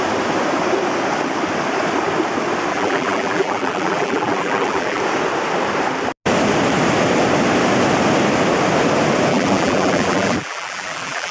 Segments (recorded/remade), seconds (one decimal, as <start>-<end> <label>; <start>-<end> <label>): 0.0-2.7 recorded; 2.7-5.0 remade; 5.0-9.3 recorded; 9.3-11.3 remade